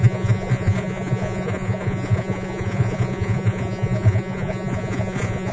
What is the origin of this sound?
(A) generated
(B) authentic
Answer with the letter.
A